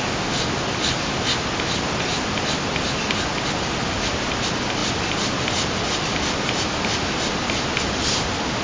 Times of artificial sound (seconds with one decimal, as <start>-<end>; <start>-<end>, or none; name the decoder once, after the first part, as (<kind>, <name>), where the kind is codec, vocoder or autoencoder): none